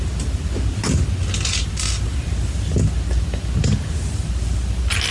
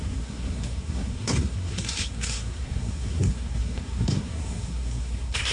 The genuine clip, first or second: first